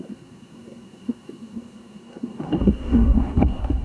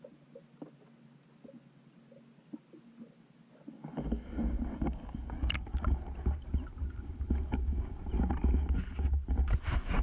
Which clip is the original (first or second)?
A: second